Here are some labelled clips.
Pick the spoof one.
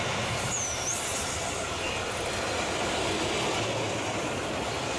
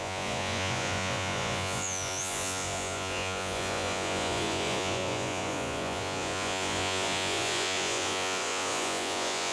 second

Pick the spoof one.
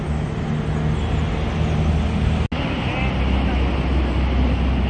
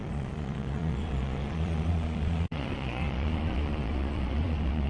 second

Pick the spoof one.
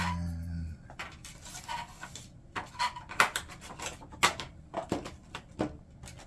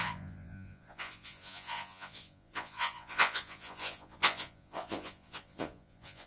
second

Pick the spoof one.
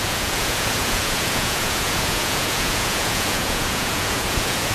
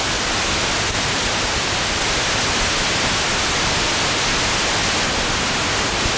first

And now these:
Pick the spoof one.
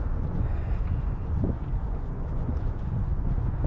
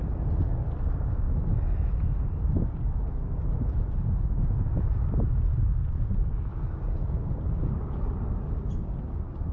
first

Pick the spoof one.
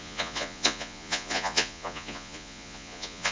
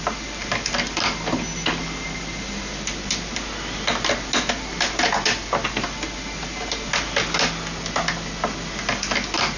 first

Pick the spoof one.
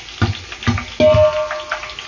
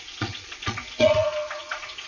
second